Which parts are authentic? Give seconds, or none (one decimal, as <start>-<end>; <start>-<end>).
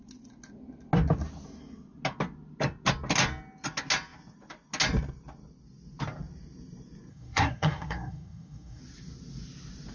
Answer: 0.0-7.1; 8.8-9.9